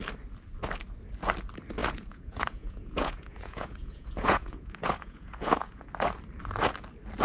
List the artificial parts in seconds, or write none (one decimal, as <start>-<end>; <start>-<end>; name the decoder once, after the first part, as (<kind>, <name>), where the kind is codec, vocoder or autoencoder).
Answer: 1.8-5.9 (vocoder, Vocos)